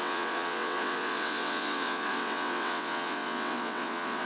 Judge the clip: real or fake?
fake